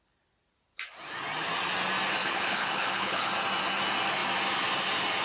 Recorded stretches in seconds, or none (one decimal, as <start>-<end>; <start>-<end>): 0.0-2.2; 3.3-5.2